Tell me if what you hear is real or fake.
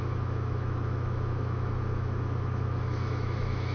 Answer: fake